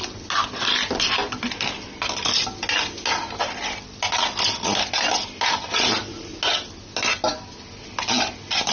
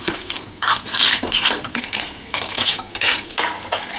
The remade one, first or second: second